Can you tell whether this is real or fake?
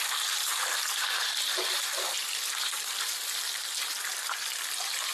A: real